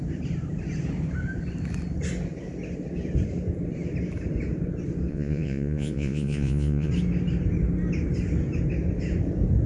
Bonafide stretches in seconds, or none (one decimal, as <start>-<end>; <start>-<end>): 0.0-5.1; 6.9-9.7

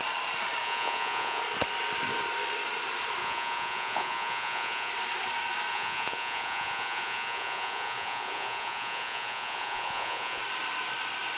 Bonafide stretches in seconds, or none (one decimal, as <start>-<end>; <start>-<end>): 0.0-0.6; 1.4-3.2; 4.9-5.7; 10.4-11.4

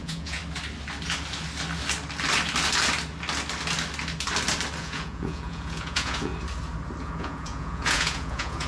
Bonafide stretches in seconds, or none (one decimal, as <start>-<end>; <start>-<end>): 0.4-4.8; 6.3-7.0

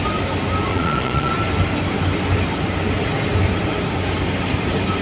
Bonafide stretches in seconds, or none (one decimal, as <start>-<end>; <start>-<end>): 0.0-0.7; 1.3-5.0